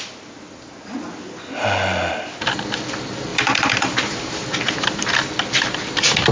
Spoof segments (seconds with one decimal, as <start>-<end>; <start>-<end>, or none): 3.3-5.0